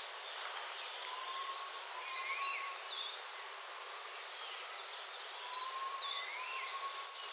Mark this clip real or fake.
fake